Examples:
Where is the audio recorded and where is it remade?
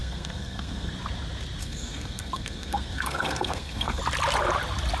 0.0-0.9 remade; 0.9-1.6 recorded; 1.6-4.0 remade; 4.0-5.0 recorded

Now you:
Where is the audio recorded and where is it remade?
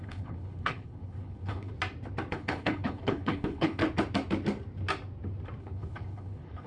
0.0-1.7 remade; 1.7-2.3 recorded; 2.3-3.8 remade; 3.8-5.6 recorded; 5.6-6.7 remade